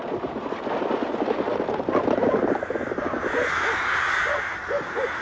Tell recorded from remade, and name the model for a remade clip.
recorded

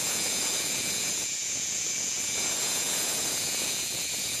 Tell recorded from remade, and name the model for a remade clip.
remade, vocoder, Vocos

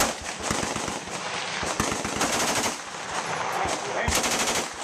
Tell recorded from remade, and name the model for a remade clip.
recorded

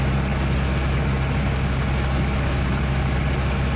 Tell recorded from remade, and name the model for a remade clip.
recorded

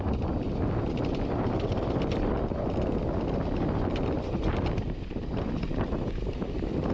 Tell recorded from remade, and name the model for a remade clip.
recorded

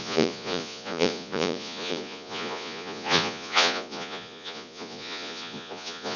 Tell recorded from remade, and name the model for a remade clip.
remade, vocoder, Vocos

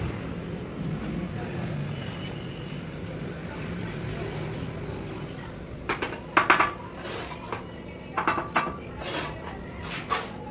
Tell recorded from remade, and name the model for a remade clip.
recorded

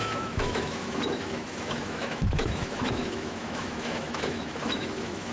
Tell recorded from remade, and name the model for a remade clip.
remade, autoencoder, DAC-VAE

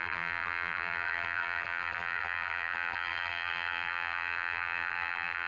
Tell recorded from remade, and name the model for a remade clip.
remade, vocoder, BigVGAN v2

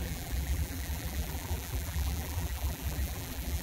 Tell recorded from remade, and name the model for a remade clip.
remade, vocoder, BigVGAN v2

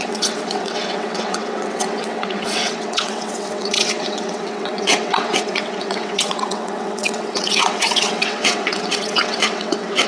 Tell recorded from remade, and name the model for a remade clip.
remade, vocoder, WaveNeXt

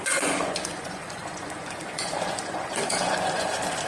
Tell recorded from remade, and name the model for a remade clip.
remade, vocoder, Vocos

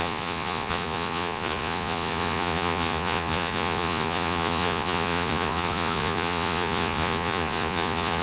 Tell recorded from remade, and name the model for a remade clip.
remade, vocoder, Vocos